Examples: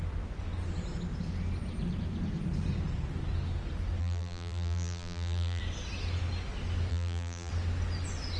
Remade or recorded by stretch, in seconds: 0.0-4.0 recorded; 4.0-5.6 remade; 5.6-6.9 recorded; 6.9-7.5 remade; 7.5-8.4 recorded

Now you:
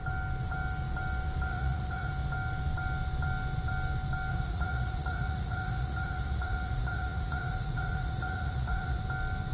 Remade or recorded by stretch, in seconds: 0.0-1.5 recorded; 1.5-2.1 remade; 2.1-4.3 recorded; 4.3-9.0 remade; 9.0-9.5 recorded

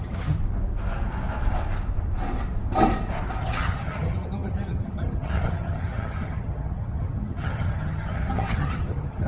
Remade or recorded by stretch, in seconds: 0.0-0.4 remade; 0.4-3.4 recorded; 3.4-9.3 remade